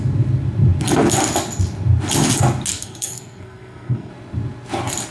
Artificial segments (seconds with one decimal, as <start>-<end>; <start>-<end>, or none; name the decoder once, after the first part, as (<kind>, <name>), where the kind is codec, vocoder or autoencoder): 2.7-4.1 (codec, SNAC)